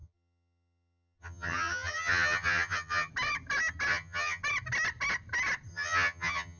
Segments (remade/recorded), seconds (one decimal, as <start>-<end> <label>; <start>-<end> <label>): 0.0-3.1 remade; 3.1-3.9 recorded; 3.9-4.4 remade; 4.4-5.7 recorded; 5.7-6.6 remade